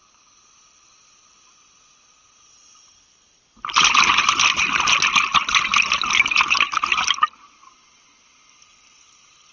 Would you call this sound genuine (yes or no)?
yes